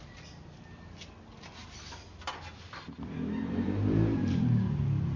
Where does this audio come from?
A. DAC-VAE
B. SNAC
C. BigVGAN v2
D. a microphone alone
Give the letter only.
D